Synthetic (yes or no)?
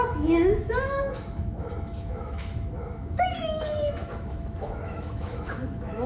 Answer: yes